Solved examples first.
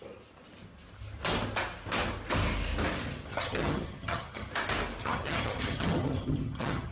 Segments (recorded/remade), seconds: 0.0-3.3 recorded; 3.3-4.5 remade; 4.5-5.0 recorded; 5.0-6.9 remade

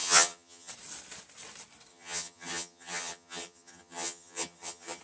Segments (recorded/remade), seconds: 0.0-0.7 remade; 0.7-1.9 recorded; 1.9-5.0 remade

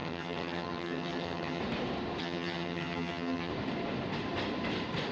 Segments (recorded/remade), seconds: 0.0-1.6 remade; 1.6-2.2 recorded; 2.2-3.5 remade; 3.5-5.1 recorded

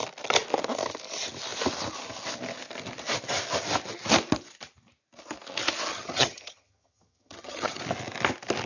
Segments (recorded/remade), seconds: 0.0-5.9 recorded; 5.9-7.8 remade; 7.8-8.7 recorded

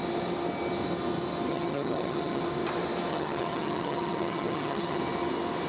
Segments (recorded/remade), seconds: 0.0-1.5 recorded; 1.5-2.4 remade; 2.4-3.1 recorded; 3.1-5.0 remade; 5.0-5.7 recorded

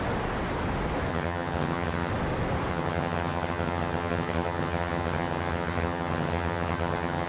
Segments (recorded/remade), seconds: 0.0-1.1 recorded; 1.1-2.1 remade; 2.1-2.7 recorded; 2.7-7.3 remade

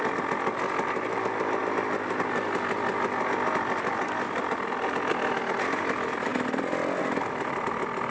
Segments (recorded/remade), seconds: 0.0-8.1 recorded